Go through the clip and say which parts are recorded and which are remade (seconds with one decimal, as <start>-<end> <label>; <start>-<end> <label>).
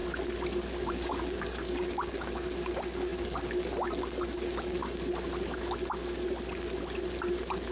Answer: 0.0-0.9 recorded; 0.9-4.8 remade; 4.8-7.7 recorded